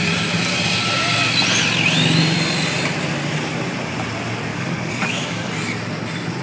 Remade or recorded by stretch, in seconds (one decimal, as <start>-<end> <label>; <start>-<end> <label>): 0.0-4.5 recorded; 4.5-5.5 remade; 5.5-6.4 recorded